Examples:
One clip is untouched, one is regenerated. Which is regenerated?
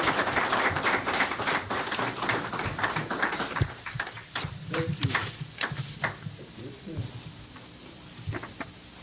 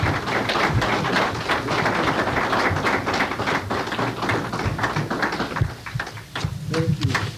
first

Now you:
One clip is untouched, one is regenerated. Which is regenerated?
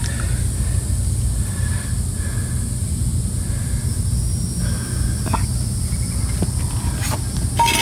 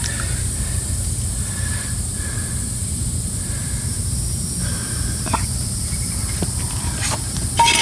second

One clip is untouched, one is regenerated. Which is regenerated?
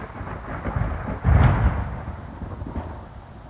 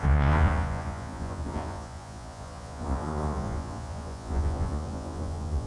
second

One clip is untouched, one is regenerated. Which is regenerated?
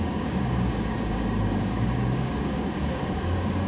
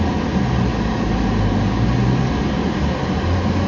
first